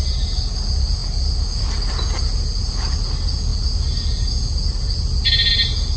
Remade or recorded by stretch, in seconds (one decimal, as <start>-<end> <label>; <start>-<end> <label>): 0.0-6.0 recorded